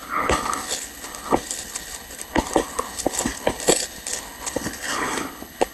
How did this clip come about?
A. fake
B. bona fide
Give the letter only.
A